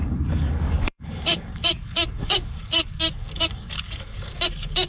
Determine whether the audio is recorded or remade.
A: remade